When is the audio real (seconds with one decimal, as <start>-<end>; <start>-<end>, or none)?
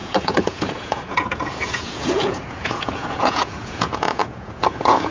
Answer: none